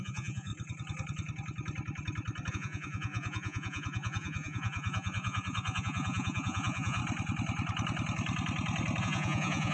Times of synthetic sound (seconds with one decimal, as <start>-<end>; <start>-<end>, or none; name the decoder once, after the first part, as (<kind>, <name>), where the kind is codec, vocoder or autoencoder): 0.0-0.5 (vocoder, Vocos); 2.5-7.0; 9.0-9.7